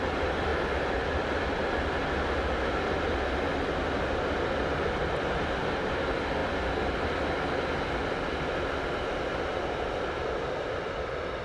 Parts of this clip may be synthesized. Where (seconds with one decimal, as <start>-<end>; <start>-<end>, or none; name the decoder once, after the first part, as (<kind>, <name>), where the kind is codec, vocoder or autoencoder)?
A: none